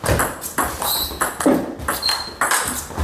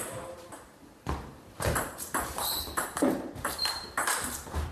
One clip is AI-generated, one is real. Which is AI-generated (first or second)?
second